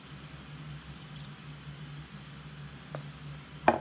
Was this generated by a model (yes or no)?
no